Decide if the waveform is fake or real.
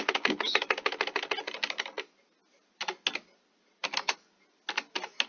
real